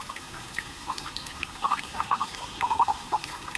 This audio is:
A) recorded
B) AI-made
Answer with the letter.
B